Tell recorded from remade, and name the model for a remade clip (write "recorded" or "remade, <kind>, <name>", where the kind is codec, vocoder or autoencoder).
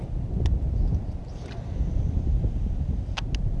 recorded